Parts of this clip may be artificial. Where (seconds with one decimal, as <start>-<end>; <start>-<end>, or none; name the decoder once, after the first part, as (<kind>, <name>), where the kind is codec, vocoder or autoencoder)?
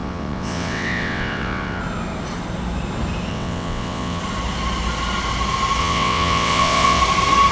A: 0.0-1.8 (vocoder, WaveNeXt); 3.3-4.2; 5.8-7.0